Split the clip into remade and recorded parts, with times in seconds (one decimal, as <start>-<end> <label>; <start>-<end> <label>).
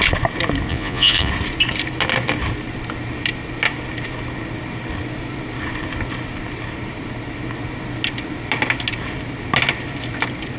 0.0-0.7 recorded; 0.7-1.3 remade; 1.3-10.6 recorded